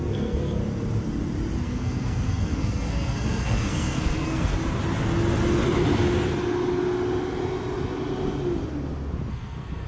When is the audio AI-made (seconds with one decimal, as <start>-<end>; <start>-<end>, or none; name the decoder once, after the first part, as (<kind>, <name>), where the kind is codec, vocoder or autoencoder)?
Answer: 0.0-0.6 (codec, SNAC); 1.6-4.5; 9.3-9.9